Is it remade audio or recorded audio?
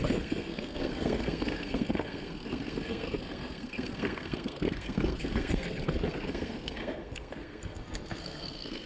remade